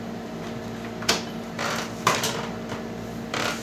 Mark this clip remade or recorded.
remade